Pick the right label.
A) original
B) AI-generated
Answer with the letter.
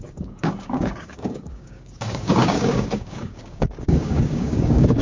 B